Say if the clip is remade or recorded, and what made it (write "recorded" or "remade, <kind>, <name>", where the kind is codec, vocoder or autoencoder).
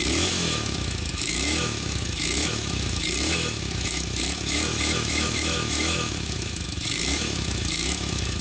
remade, autoencoder, DAC-VAE